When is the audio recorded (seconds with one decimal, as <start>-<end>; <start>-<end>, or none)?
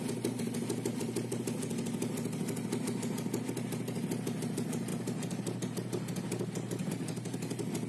0.0-7.9